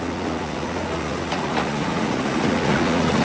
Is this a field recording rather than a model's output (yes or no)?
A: no